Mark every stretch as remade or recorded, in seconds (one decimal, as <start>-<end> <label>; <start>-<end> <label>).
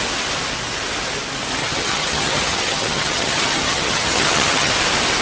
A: 0.0-1.6 recorded; 1.6-4.7 remade; 4.7-5.2 recorded